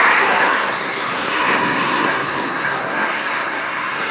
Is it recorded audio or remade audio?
remade